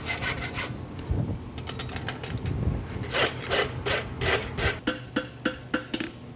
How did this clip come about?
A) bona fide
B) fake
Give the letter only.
A